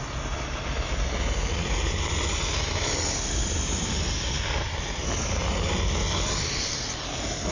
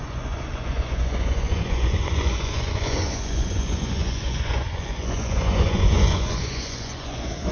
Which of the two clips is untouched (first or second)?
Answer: first